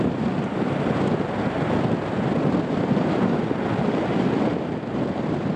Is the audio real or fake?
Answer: real